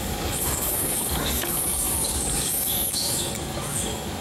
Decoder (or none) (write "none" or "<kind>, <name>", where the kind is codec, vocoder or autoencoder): codec, DAC